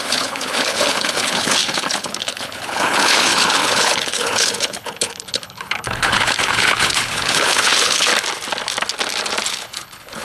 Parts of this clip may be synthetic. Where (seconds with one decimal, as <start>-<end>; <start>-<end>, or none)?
0.0-8.1; 9.5-10.2